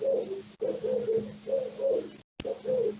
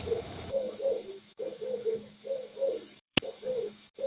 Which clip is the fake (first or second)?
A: second